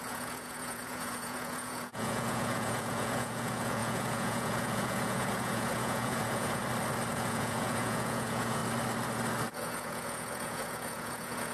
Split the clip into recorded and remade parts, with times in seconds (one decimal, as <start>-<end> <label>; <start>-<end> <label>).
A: 0.0-6.6 remade; 6.6-7.1 recorded; 7.1-8.6 remade; 8.6-9.5 recorded; 9.5-11.5 remade